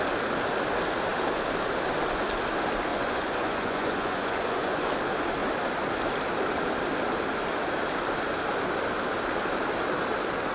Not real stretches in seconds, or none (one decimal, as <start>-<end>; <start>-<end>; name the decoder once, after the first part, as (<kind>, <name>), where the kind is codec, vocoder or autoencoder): 2.9-4.9 (vocoder, Vocos)